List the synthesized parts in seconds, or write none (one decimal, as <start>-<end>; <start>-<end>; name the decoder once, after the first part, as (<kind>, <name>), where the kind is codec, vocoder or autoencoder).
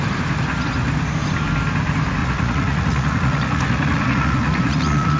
2.2-5.2 (vocoder, Vocos)